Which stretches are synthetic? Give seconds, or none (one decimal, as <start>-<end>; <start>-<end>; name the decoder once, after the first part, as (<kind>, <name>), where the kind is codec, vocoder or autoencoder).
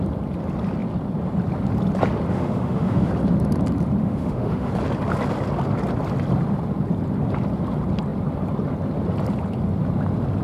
2.3-3.1 (autoencoder, DAC-VAE); 4.0-4.7